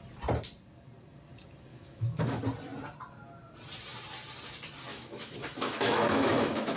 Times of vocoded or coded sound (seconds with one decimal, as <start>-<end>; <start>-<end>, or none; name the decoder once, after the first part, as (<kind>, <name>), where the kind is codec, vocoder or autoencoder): 1.7-2.4 (autoencoder, DAC-VAE); 4.9-6.8